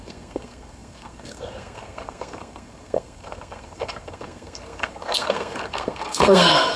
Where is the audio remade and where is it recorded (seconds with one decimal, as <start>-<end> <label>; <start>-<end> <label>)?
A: 0.0-6.8 remade